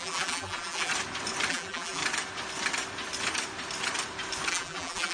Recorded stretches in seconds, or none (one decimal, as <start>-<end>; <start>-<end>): 0.9-1.5; 2.0-4.5